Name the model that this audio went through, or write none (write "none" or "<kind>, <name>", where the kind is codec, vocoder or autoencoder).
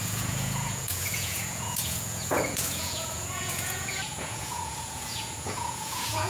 vocoder, Vocos